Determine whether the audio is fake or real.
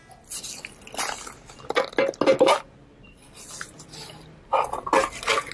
real